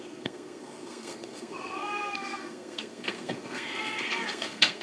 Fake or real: fake